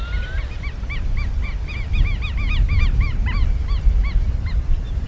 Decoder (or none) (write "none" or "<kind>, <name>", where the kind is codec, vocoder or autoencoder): none